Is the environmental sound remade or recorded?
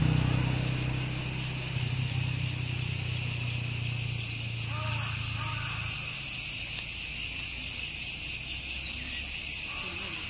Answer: recorded